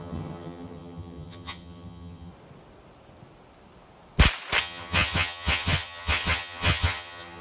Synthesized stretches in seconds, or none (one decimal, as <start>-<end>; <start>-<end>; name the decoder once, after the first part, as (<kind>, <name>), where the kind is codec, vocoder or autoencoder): 0.0-2.3 (vocoder, HiFi-GAN); 4.6-7.4